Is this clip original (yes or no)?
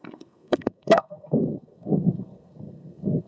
no